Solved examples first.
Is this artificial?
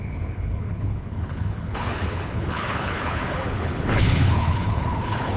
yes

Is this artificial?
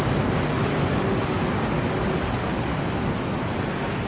no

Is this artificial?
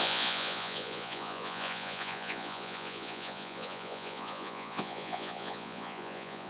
yes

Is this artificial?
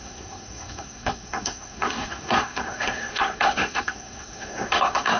yes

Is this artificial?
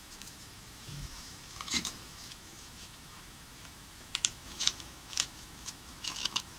yes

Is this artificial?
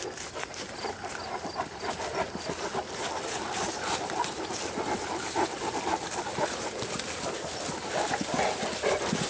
no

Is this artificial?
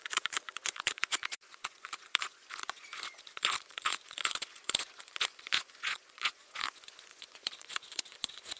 yes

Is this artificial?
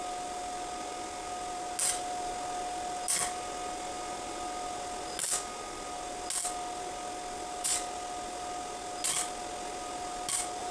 no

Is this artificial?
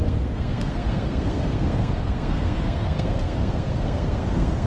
yes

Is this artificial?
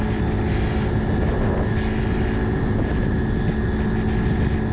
no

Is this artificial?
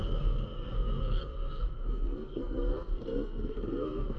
yes